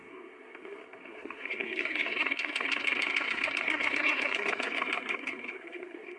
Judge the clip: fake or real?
fake